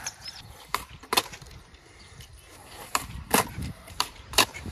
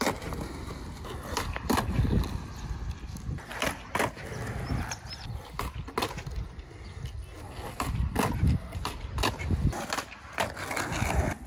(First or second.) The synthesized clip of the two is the first